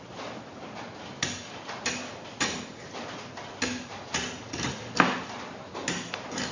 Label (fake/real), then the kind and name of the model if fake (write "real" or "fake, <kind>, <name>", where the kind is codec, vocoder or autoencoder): real